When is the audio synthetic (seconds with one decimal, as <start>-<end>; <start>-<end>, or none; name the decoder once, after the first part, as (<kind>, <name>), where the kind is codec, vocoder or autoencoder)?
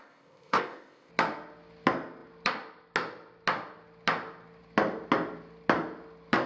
0.0-1.1 (codec, ZipCodec)